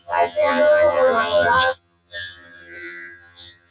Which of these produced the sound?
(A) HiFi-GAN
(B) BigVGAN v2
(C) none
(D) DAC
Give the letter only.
A